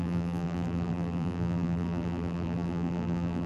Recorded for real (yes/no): no